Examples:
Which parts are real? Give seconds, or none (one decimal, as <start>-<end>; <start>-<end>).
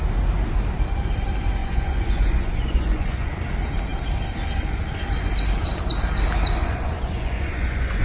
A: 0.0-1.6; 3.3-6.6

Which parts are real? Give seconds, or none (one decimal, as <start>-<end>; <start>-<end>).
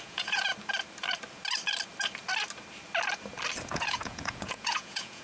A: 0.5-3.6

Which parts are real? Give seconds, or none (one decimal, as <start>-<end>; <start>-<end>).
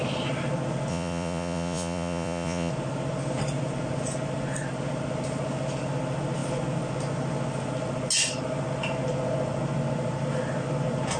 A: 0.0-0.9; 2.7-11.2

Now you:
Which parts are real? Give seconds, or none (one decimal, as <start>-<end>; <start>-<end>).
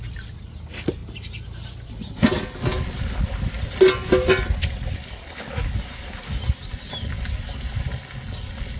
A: 0.0-8.8